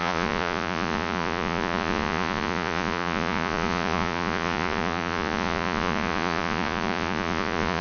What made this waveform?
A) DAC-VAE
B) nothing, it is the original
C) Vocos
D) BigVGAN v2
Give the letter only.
C